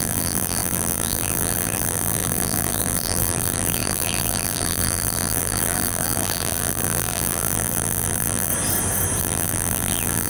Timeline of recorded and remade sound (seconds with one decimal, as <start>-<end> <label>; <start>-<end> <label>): 0.0-8.5 remade; 8.5-9.2 recorded; 9.2-10.3 remade